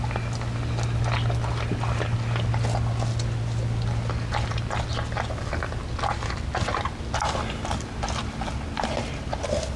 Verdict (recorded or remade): recorded